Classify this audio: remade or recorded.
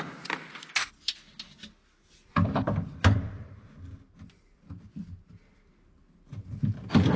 recorded